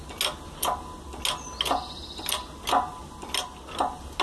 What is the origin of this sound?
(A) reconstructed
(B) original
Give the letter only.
B